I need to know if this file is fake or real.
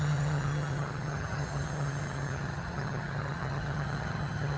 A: fake